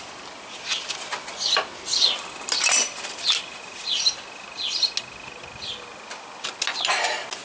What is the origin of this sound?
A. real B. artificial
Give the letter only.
A